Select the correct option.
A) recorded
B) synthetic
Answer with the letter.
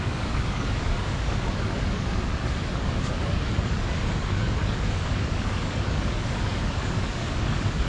B